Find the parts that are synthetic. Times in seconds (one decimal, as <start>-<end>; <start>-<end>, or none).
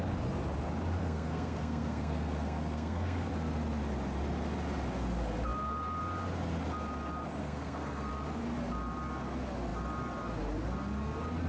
1.0-3.3; 7.4-8.1